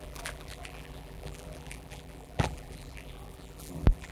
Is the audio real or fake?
fake